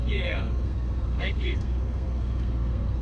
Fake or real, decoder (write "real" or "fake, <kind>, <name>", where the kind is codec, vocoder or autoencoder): fake, codec, SNAC